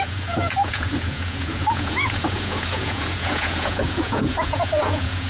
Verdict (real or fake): fake